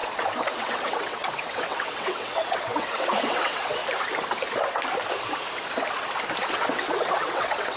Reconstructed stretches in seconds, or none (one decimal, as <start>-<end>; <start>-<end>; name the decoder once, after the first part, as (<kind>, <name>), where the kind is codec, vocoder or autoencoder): 0.5-3.8 (vocoder, WaveNeXt); 6.5-7.8